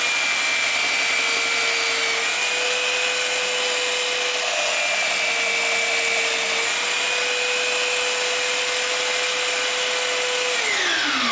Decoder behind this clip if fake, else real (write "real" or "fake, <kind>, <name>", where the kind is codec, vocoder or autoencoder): real